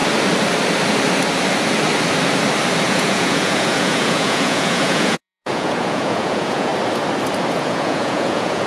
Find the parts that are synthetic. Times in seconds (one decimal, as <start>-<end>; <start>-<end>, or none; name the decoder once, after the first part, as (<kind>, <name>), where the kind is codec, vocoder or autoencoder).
2.9-6.7 (vocoder, Vocos); 7.5-8.7